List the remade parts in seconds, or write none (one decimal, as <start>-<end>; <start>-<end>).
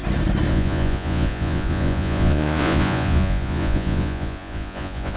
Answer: 0.5-5.2